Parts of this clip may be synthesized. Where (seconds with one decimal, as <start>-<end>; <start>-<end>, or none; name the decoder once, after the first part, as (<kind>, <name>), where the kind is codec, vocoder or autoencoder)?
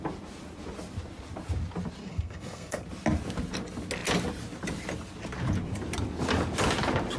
2.0-2.8 (codec, SNAC)